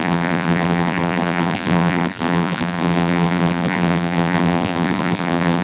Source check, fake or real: fake